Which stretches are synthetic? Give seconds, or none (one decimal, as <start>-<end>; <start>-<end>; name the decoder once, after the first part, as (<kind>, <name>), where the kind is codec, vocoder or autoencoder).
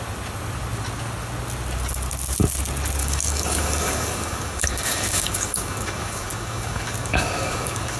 3.0-8.0 (codec, DAC)